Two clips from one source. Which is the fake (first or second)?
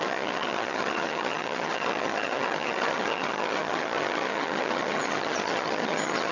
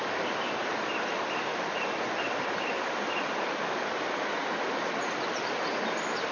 first